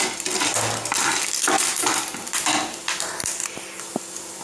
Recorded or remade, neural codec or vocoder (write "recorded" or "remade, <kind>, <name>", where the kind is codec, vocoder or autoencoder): recorded